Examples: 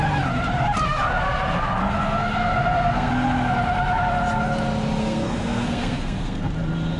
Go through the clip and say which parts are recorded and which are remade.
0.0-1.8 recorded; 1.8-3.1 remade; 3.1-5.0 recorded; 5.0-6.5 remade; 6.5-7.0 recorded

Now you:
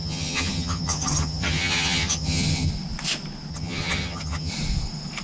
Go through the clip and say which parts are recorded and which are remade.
0.0-2.7 remade; 2.7-3.5 recorded; 3.5-4.5 remade; 4.5-5.2 recorded

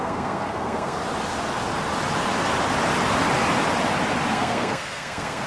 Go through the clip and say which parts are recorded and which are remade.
0.0-1.0 remade; 1.0-4.3 recorded; 4.3-5.5 remade

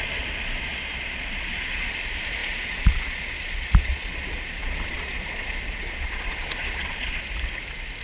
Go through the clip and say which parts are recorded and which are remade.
0.0-0.7 recorded; 0.7-1.9 remade; 1.9-2.4 recorded; 2.4-7.2 remade; 7.2-8.0 recorded

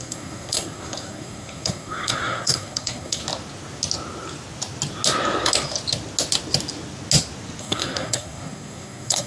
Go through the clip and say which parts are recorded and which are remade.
0.0-3.2 remade; 3.2-7.6 recorded; 7.6-9.3 remade

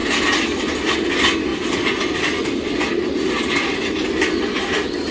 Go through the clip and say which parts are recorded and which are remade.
0.0-5.1 recorded